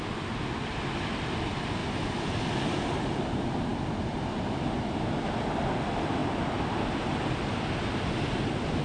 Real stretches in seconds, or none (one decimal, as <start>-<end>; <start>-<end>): 0.0-8.8